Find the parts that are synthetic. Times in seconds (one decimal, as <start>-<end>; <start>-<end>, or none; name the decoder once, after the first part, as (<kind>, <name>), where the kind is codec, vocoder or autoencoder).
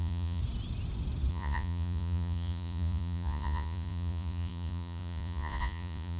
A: 0.0-0.4 (vocoder, Vocos); 1.3-6.2